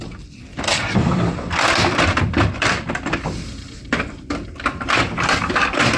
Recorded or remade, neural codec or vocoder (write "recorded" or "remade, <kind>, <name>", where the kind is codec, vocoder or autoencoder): remade, vocoder, BigVGAN v2